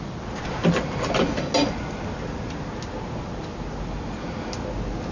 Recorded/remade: recorded